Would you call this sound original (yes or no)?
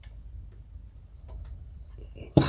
no